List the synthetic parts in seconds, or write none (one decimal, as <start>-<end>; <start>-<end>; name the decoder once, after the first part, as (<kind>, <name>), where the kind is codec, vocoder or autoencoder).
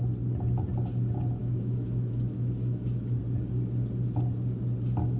1.4-3.2 (autoencoder, DAC-VAE)